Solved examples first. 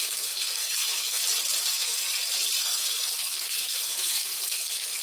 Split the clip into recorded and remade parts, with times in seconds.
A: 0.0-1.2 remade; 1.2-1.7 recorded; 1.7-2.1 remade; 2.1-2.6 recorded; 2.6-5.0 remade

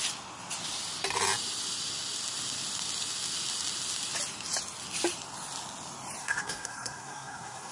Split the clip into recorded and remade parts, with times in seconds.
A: 0.0-6.2 recorded; 6.2-7.7 remade

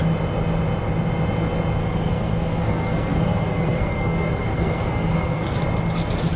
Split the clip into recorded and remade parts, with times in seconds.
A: 0.0-1.8 recorded; 1.8-5.6 remade; 5.6-6.4 recorded